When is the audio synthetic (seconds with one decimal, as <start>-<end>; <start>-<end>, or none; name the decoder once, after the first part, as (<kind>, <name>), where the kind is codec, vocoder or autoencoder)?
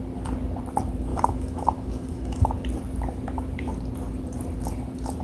1.1-2.5 (autoencoder, DAC-VAE)